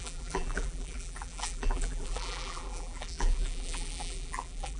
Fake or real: fake